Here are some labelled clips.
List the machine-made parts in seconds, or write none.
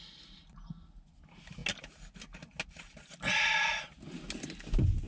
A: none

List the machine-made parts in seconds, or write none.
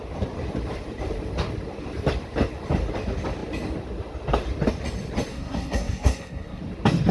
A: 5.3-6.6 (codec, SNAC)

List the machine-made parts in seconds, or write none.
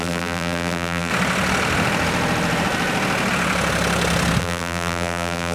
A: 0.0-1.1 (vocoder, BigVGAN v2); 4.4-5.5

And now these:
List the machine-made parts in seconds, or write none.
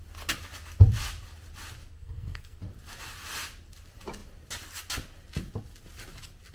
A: 1.9-2.6 (codec, SNAC)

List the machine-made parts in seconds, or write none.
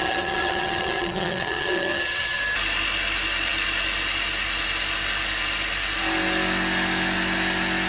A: 0.0-2.4 (vocoder, HiFi-GAN)